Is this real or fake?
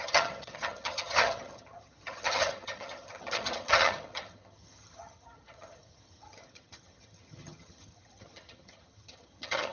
fake